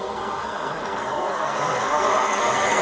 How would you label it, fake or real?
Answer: fake